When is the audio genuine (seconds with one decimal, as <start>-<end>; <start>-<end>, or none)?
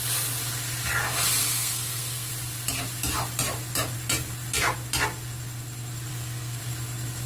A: 0.0-1.4; 2.3-6.1; 6.6-7.3